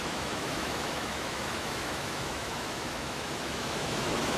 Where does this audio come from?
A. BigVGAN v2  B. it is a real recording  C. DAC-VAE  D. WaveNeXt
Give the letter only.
C